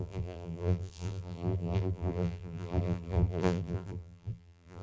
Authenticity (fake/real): fake